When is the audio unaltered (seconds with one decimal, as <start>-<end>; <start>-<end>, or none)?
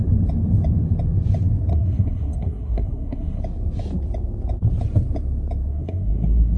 0.0-1.7; 3.4-5.7